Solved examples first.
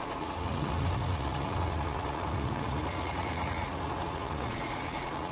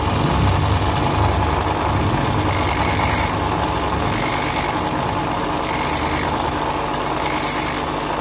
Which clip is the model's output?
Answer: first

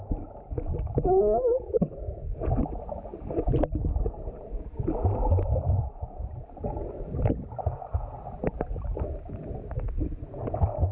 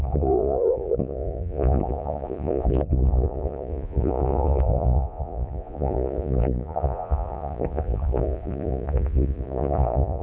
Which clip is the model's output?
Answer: second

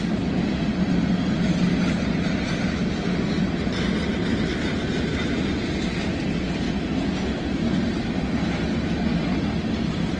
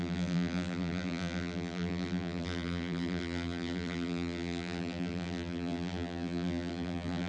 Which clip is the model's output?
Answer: second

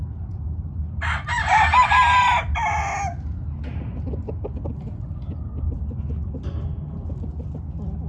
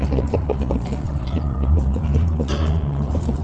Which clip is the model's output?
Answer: second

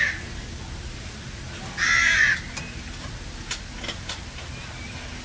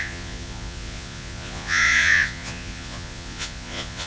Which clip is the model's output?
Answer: second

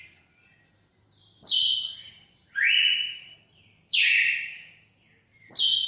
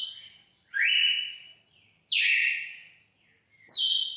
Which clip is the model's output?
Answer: first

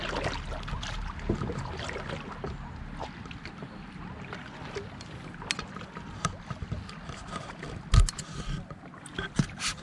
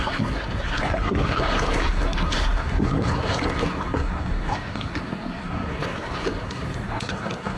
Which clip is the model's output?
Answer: second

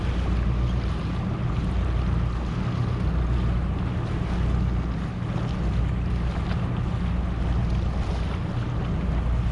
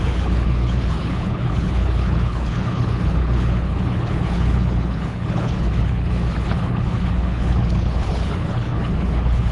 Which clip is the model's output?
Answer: second